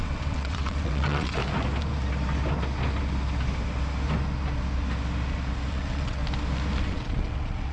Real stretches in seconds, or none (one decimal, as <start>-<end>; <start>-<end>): 1.4-5.7; 6.2-6.8